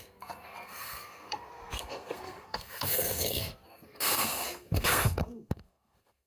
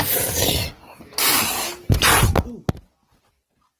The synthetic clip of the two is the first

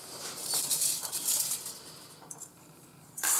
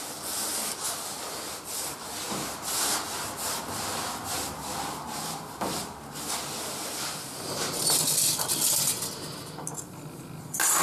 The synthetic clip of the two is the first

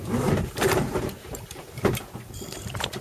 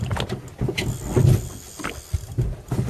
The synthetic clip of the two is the first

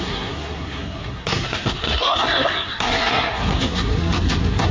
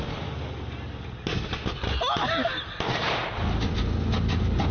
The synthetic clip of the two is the first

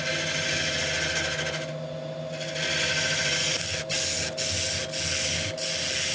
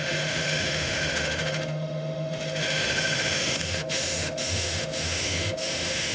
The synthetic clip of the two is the second